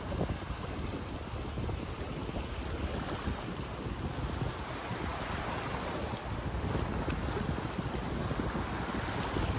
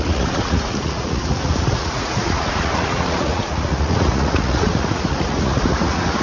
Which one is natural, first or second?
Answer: first